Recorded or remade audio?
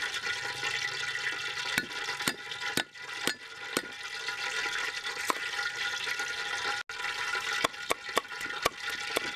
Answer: recorded